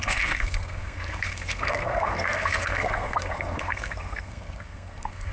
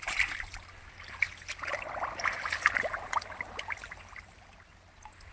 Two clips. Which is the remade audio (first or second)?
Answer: first